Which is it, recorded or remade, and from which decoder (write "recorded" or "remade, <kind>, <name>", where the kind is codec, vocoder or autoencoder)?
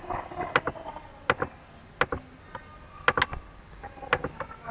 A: recorded